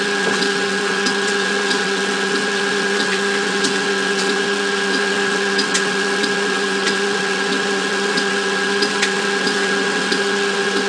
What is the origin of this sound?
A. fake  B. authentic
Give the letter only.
A